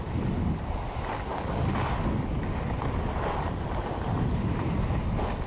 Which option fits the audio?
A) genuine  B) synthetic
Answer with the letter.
A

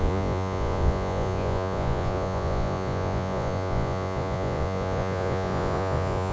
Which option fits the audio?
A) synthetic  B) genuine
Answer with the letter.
A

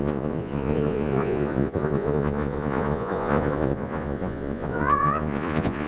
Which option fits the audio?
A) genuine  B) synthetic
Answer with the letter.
B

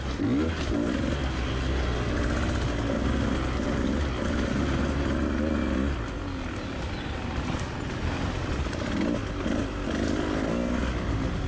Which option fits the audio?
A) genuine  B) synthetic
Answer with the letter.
A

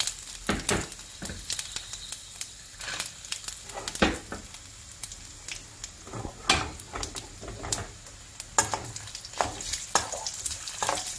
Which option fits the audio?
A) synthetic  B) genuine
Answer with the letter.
B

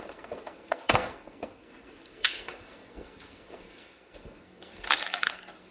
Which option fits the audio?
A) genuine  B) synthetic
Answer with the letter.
B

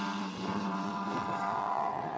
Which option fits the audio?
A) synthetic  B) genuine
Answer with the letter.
A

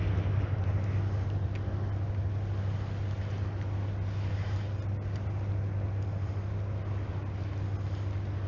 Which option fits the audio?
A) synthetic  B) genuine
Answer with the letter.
B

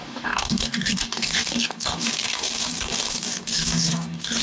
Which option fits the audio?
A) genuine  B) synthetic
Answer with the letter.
B